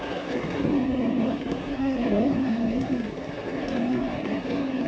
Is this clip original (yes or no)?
no